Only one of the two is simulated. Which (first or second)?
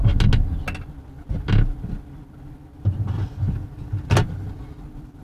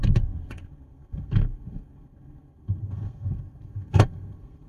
second